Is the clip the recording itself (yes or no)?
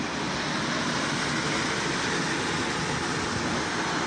yes